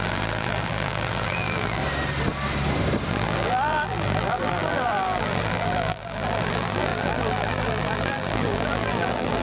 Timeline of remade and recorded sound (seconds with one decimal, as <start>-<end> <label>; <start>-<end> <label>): 0.0-1.8 remade; 1.8-3.1 recorded; 3.1-9.4 remade